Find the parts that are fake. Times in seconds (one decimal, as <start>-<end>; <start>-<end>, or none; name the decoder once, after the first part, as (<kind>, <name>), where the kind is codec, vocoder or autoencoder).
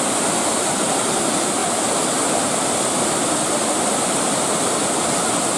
none